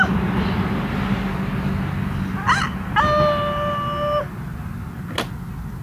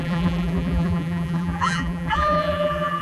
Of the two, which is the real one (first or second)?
first